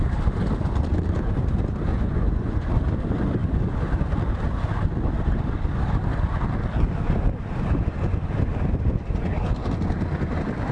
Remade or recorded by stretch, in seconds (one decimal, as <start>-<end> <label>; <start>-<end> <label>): 0.0-1.9 recorded; 1.9-2.7 remade; 2.7-10.7 recorded